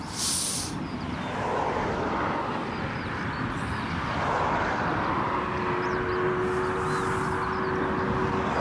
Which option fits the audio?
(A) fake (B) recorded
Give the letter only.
B